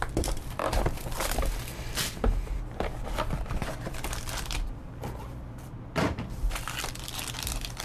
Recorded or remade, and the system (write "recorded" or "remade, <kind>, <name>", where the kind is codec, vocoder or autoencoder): remade, vocoder, BigVGAN v2